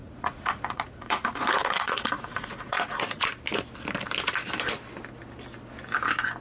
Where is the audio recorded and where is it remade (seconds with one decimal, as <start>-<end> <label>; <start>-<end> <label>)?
0.0-3.3 remade; 3.3-6.4 recorded